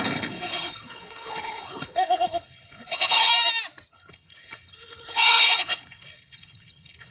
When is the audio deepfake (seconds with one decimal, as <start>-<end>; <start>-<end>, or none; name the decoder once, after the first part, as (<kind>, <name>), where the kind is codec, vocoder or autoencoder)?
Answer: 0.0-3.3 (codec, HILCodec); 3.9-7.1